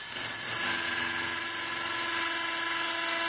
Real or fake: real